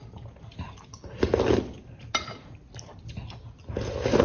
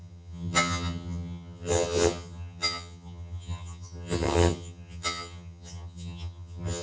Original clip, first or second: first